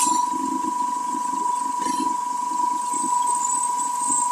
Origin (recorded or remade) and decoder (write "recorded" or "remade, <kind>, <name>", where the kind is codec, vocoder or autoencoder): recorded